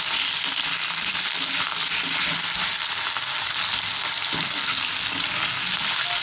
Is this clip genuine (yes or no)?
yes